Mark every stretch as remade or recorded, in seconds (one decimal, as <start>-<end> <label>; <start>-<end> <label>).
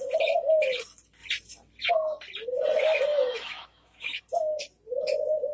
0.0-3.1 recorded; 3.1-4.2 remade; 4.2-5.5 recorded